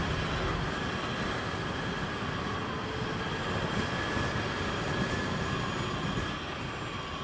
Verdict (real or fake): real